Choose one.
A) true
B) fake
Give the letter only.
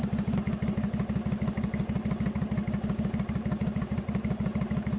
A